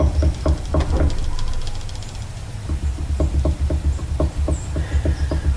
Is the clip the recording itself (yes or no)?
yes